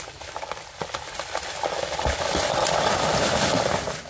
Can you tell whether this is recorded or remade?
recorded